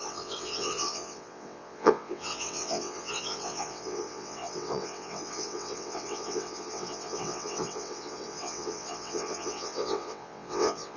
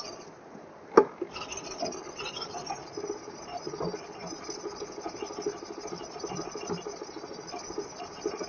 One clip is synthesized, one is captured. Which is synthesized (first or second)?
first